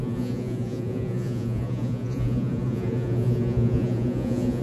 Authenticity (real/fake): fake